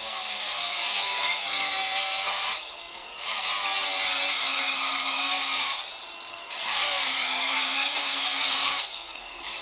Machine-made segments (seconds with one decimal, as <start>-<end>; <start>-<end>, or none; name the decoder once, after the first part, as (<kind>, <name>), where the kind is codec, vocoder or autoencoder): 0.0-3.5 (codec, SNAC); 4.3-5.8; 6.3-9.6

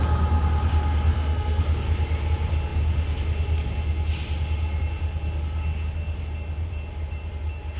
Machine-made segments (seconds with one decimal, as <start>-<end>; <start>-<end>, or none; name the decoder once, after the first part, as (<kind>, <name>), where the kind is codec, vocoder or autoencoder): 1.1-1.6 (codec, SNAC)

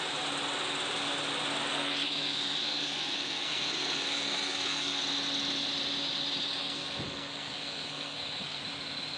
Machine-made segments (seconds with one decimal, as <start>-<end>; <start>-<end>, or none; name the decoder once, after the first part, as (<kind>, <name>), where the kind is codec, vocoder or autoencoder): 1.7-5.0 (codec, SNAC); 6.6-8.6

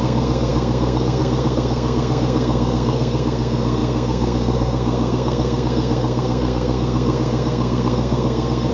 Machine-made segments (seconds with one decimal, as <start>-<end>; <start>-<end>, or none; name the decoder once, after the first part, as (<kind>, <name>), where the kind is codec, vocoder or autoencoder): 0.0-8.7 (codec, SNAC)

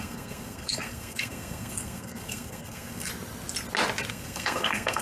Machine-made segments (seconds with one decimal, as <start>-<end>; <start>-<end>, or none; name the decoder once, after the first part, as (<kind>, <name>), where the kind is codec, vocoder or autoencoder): 0.0-3.1 (codec, SNAC); 4.1-5.0

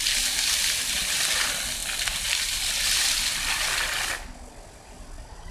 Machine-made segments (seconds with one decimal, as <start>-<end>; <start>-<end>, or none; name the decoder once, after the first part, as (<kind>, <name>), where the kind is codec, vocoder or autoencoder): none